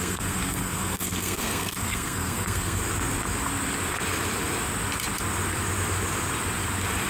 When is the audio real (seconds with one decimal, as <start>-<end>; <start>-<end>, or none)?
2.8-7.1